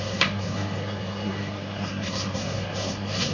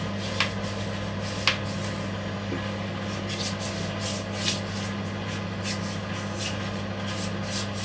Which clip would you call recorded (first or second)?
second